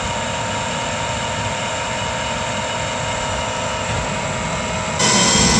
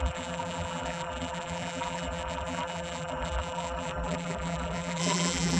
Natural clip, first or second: first